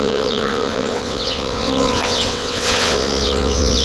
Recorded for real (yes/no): no